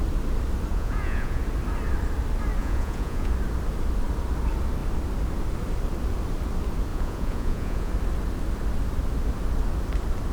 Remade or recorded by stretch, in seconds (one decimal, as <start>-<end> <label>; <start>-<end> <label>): 0.0-0.7 recorded; 0.7-1.4 remade; 1.4-2.6 recorded; 2.6-3.3 remade; 3.3-6.9 recorded; 6.9-7.9 remade; 7.9-10.3 recorded